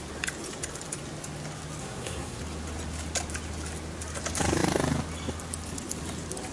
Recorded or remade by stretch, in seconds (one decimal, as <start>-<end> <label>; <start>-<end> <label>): 0.0-1.8 recorded; 1.8-2.4 remade; 2.4-6.5 recorded